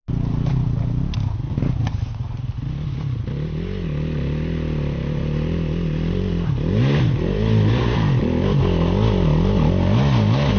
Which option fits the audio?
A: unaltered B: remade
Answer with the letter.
A